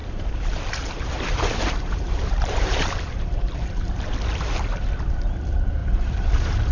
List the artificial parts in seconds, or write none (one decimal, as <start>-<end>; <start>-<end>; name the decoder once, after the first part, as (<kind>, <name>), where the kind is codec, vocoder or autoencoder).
0.0-4.0 (vocoder, BigVGAN v2); 5.8-6.7